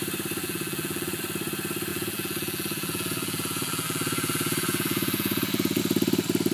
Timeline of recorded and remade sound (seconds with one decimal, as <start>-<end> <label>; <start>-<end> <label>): 0.0-0.4 recorded; 0.4-1.2 remade; 1.2-1.9 recorded; 1.9-5.8 remade; 5.8-6.5 recorded